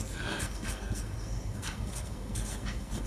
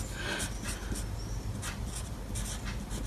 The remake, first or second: first